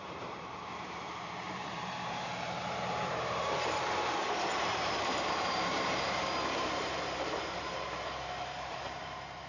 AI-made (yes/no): yes